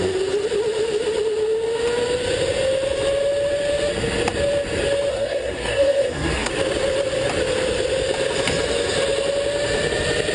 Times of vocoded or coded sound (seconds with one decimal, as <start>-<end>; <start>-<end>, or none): 5.1-6.5

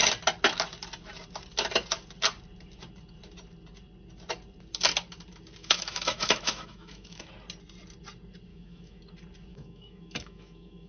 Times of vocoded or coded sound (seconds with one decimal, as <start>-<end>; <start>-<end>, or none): 5.6-7.3; 8.5-9.0; 9.5-10.9

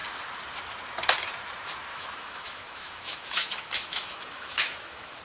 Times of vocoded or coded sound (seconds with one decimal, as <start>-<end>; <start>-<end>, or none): 1.9-5.2